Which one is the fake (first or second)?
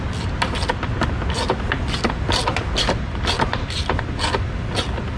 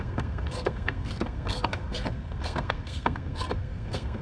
second